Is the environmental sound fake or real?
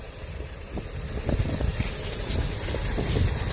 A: real